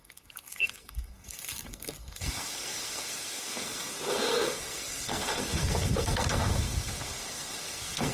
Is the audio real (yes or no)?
no